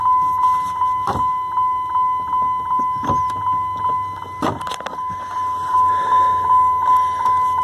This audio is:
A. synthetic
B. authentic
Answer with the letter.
B